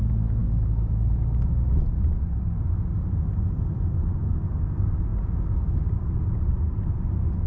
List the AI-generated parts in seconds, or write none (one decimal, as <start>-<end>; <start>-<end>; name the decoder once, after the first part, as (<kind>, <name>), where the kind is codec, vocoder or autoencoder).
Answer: none